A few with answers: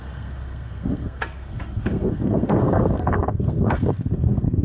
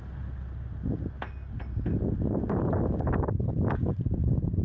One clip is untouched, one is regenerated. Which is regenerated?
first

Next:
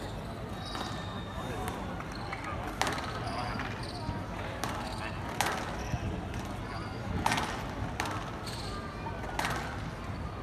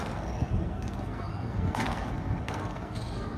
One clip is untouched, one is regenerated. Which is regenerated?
second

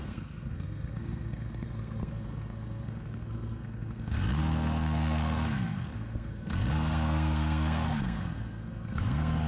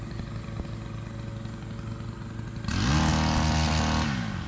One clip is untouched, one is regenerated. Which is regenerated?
first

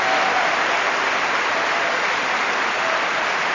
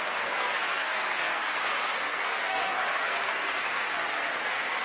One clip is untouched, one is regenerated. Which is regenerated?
second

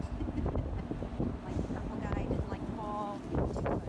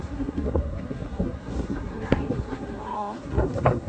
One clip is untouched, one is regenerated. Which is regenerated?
second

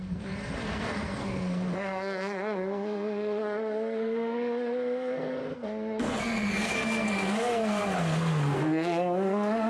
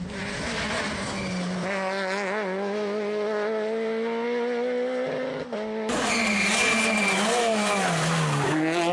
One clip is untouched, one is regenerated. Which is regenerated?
first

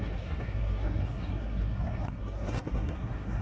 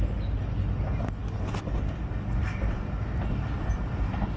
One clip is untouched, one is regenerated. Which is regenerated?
first